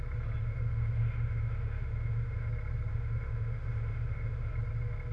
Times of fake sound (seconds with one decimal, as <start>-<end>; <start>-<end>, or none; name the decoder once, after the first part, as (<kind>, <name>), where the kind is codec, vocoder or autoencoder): 0.4-2.5 (autoencoder, DAC-VAE); 2.9-4.5